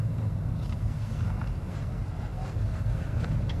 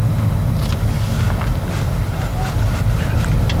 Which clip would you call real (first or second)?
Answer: second